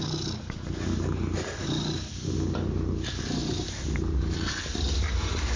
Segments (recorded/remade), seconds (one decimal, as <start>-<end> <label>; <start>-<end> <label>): 0.0-5.6 recorded